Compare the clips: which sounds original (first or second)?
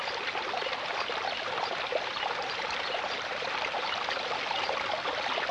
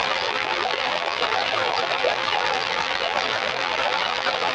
first